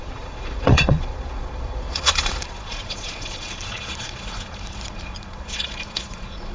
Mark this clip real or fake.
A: fake